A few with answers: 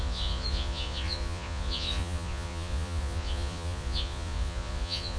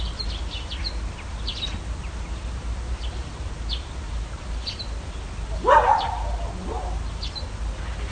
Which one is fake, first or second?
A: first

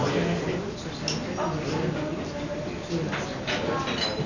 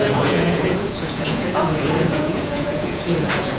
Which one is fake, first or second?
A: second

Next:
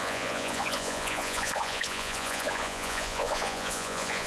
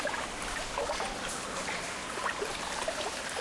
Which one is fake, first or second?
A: first